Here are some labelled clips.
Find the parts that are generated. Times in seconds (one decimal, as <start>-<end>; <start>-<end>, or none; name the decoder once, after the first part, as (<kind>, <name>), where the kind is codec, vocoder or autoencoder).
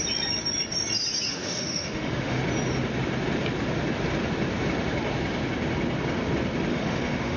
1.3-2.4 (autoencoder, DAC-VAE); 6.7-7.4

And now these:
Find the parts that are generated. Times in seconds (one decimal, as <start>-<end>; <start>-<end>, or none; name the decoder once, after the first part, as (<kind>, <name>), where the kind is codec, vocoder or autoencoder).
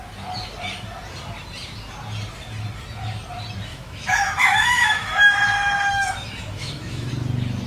3.7-7.1 (autoencoder, DAC-VAE)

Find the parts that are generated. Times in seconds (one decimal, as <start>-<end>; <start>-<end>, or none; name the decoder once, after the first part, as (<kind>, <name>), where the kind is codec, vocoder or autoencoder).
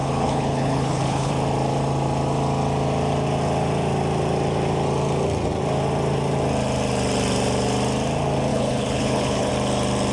0.0-1.3 (codec, HILCodec); 8.5-9.5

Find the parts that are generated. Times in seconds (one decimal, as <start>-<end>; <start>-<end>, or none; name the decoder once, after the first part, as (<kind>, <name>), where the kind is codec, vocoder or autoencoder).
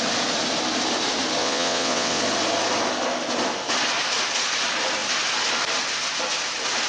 1.4-2.2 (vocoder, WaveNeXt)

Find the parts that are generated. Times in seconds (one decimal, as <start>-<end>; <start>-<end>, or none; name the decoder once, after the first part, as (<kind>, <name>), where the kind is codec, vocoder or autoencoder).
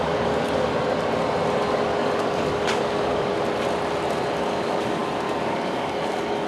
0.0-0.7 (codec, DAC); 1.7-3.3; 4.4-6.5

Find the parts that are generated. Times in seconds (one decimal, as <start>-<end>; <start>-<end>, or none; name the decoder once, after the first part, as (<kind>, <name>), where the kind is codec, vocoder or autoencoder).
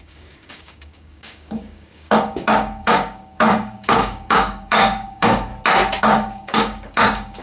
0.0-5.5 (codec, DAC); 6.0-7.4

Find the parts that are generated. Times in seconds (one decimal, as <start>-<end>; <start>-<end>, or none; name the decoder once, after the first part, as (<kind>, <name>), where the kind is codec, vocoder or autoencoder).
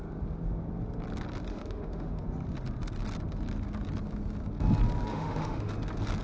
1.5-2.2 (autoencoder, DAC-VAE); 5.1-5.7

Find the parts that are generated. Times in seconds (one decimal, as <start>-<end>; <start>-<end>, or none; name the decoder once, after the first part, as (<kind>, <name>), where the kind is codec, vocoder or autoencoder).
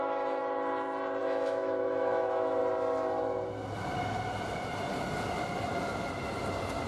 0.0-0.4 (autoencoder, DAC-VAE); 1.2-2.6